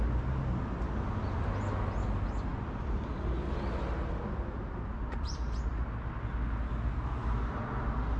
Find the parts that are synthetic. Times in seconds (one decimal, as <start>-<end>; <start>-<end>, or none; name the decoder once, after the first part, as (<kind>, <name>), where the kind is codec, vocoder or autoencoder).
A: none